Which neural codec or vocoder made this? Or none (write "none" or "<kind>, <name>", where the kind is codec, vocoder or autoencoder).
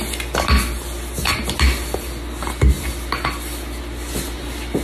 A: none